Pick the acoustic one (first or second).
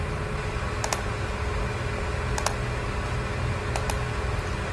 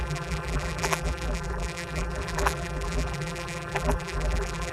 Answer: first